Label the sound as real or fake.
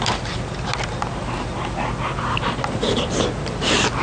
real